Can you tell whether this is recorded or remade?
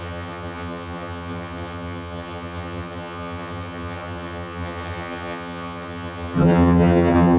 remade